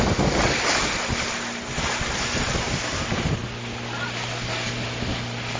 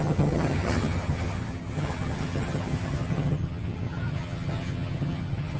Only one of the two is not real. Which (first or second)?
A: second